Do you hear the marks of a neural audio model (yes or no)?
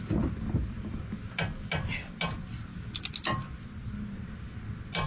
no